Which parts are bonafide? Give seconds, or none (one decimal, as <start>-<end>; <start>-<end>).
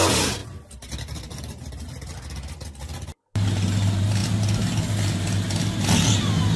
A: 0.0-6.6